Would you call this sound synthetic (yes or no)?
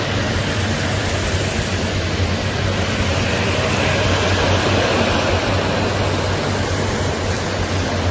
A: no